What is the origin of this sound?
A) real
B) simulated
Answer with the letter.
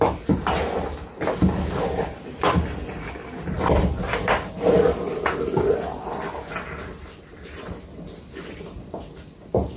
A